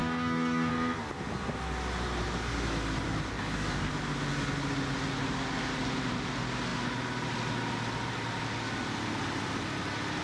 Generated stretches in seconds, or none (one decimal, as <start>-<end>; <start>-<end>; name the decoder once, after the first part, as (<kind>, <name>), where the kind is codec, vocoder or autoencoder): 0.0-0.7 (codec, DAC); 3.3-3.9